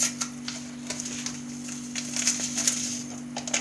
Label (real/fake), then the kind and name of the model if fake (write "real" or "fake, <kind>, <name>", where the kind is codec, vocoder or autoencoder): real